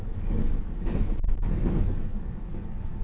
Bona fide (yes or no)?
no